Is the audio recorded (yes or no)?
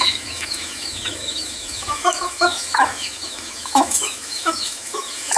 no